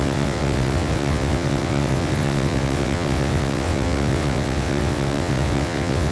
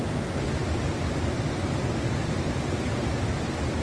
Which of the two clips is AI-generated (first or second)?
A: first